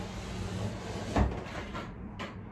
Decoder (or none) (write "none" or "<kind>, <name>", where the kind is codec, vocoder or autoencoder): none